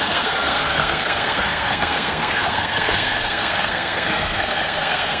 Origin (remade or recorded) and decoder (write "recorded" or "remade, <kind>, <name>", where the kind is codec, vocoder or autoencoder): remade, codec, SNAC